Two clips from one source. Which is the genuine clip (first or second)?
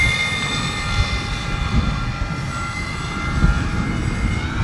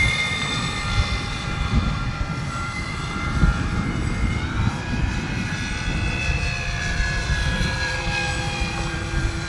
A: first